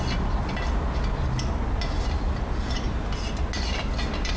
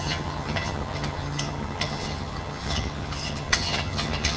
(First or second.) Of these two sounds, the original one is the first